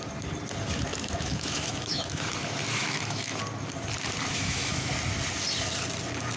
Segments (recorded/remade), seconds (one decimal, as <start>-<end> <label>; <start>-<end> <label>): 0.0-0.9 recorded; 0.9-2.3 remade; 2.3-2.7 recorded; 2.7-3.4 remade; 3.4-4.3 recorded; 4.3-4.9 remade; 4.9-6.4 recorded